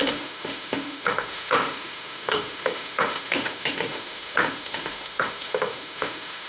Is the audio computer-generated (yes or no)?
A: yes